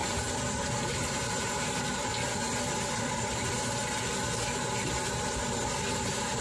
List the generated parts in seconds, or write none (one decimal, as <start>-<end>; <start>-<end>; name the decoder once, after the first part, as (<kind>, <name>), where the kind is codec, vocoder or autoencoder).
0.0-2.1 (vocoder, BigVGAN v2); 3.0-3.8; 5.1-6.4

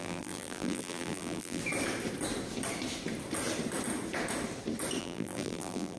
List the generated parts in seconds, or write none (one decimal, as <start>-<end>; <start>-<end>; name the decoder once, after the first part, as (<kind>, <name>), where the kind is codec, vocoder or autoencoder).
0.0-1.6 (vocoder, BigVGAN v2); 5.0-6.0

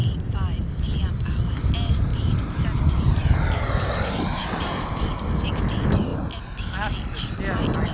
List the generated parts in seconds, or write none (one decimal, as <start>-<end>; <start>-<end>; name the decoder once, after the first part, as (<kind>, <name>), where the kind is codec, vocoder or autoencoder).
2.1-5.0 (vocoder, BigVGAN v2)

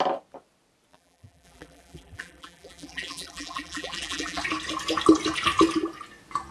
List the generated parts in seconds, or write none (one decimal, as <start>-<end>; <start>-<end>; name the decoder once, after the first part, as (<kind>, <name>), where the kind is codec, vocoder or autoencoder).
0.9-4.4 (vocoder, BigVGAN v2)

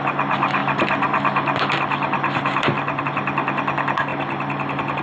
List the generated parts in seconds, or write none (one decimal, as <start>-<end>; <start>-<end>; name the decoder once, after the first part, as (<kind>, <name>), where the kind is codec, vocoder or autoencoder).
none

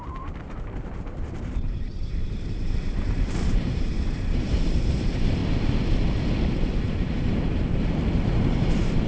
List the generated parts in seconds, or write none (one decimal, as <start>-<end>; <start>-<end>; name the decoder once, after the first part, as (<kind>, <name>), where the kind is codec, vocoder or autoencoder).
0.0-5.4 (vocoder, BigVGAN v2); 6.8-9.1

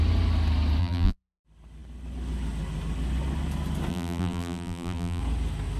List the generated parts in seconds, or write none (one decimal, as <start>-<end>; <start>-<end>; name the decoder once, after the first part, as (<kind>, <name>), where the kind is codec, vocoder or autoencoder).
0.8-1.4 (vocoder, BigVGAN v2); 3.9-5.2